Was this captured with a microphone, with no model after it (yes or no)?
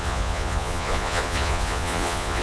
no